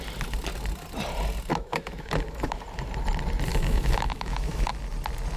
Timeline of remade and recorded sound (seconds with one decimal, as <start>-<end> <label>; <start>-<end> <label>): 0.0-1.5 recorded; 1.5-2.6 remade; 2.6-3.5 recorded; 3.5-4.7 remade; 4.7-5.4 recorded